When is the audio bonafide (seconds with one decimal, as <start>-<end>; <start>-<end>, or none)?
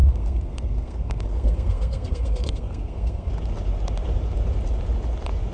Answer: 3.3-5.5